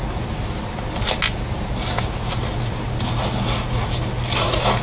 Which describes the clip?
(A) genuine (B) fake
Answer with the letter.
A